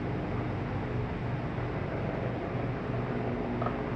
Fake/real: real